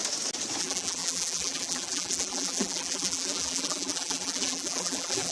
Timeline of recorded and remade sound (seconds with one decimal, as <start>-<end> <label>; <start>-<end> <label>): 0.0-0.6 recorded; 0.6-5.3 remade